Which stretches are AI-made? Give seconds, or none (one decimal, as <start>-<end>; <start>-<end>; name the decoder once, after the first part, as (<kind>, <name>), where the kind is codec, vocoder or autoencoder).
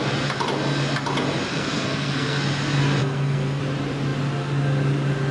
1.5-2.4 (codec, SNAC); 3.0-3.6